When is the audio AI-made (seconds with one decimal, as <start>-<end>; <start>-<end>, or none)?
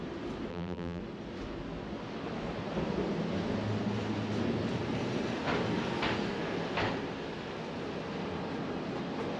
0.5-1.0